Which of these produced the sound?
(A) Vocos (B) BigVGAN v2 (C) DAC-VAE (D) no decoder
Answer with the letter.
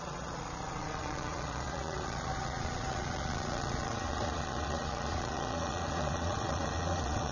A